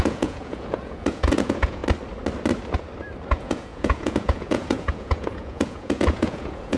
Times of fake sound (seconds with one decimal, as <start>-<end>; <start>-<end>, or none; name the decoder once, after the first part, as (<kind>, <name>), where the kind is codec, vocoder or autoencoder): 0.0-1.8 (vocoder, Vocos); 3.3-6.8

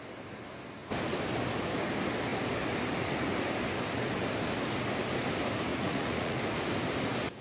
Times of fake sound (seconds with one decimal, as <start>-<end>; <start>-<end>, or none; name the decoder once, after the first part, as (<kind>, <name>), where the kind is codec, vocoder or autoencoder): 5.7-6.4 (vocoder, Vocos)

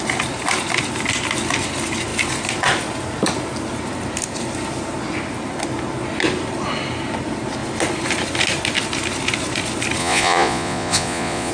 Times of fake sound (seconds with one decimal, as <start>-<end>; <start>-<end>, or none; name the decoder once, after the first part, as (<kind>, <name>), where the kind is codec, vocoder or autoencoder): 10.0-11.5 (vocoder, Vocos)